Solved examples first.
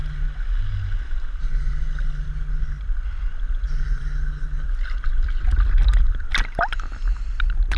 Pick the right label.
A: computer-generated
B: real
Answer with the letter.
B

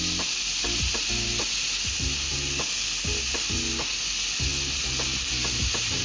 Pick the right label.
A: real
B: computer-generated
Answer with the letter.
A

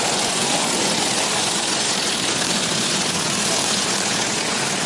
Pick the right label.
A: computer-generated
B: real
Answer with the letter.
A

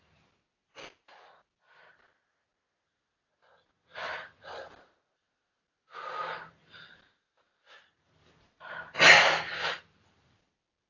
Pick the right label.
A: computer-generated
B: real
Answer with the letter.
B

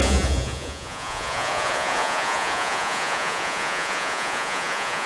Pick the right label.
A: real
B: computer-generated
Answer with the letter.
B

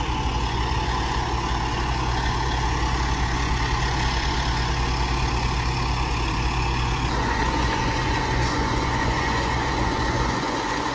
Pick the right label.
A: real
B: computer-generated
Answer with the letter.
B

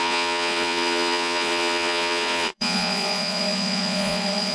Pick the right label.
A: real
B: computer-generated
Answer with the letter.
B